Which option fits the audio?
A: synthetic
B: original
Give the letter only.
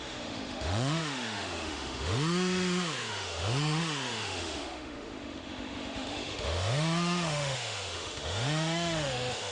A